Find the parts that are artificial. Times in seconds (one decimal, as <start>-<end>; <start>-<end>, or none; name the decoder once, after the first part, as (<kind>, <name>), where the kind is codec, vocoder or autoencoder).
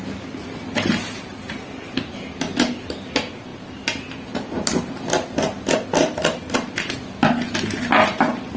none